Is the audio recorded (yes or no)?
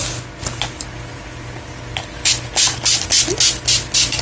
yes